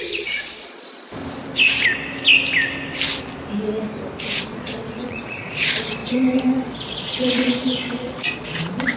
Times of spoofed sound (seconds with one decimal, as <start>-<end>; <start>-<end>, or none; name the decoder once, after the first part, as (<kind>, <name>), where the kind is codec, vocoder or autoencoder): 0.0-1.2 (vocoder, Vocos); 4.4-9.0